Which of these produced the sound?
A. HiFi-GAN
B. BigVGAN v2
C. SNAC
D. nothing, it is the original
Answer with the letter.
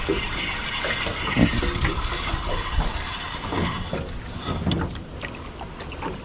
D